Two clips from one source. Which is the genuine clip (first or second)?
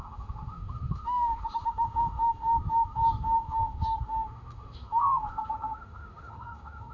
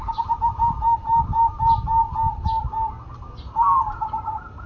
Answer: second